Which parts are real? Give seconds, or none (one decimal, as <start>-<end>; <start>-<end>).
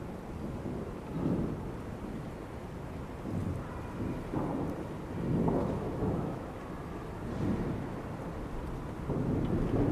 0.0-5.6; 6.6-9.9